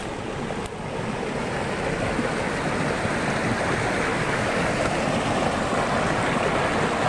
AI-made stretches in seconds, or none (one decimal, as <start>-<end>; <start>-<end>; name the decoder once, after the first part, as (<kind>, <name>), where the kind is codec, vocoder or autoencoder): 4.1-4.7 (codec, DAC)